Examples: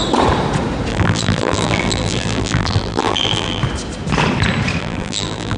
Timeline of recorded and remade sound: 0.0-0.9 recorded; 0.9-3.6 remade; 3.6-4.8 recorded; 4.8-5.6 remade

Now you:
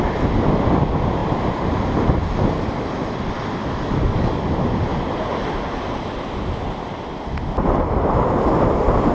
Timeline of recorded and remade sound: 0.0-3.6 recorded; 3.6-4.4 remade; 4.4-9.1 recorded

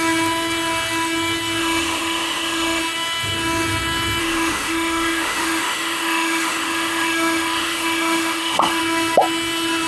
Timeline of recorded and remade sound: 0.0-1.6 recorded; 1.6-2.8 remade; 2.8-4.2 recorded; 4.2-8.8 remade; 8.8-9.9 recorded